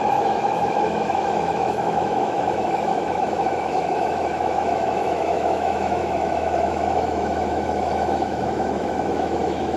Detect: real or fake fake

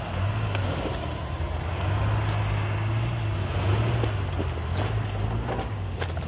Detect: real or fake real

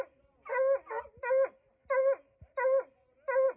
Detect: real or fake real